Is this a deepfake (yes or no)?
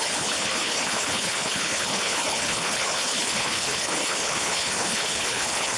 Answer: yes